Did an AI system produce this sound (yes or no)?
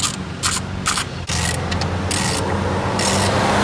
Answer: no